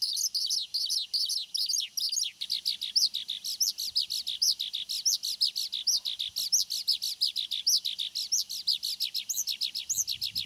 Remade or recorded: recorded